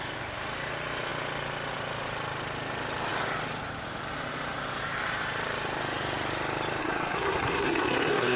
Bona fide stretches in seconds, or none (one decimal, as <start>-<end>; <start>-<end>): 0.0-6.8